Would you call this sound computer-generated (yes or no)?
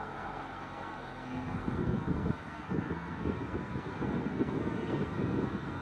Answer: yes